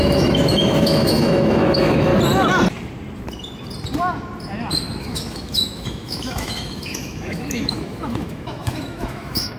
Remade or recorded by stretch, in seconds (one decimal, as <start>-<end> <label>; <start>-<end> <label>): 0.0-2.1 remade; 2.1-5.0 recorded; 5.0-9.6 remade